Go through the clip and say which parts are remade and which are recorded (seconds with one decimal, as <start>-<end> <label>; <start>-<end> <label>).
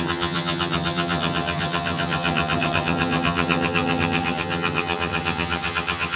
0.0-6.2 remade